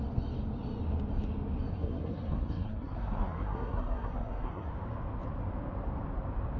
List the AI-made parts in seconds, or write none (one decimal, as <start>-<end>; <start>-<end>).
1.7-4.7